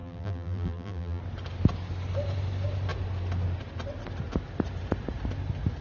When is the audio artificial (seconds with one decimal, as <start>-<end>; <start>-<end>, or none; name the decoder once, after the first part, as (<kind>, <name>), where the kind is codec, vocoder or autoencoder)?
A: 0.0-1.2 (vocoder, BigVGAN v2)